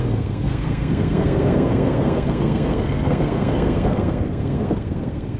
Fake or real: fake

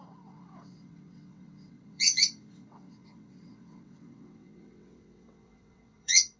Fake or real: fake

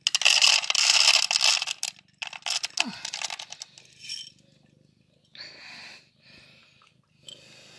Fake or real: real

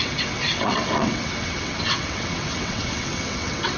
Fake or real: fake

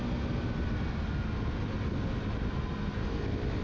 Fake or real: real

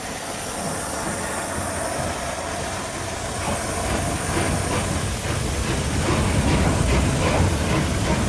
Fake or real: real